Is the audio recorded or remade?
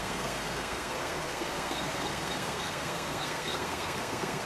remade